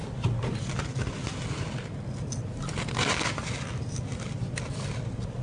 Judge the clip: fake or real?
real